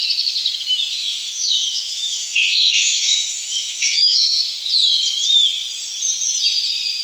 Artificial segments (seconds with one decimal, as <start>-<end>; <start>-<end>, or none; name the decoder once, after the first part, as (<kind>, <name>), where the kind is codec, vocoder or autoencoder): 0.9-4.4 (autoencoder, DAC-VAE)